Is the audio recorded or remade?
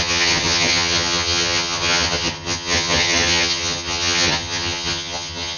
remade